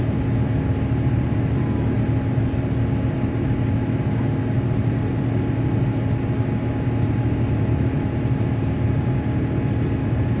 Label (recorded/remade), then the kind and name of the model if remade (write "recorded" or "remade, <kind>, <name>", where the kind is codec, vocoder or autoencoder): recorded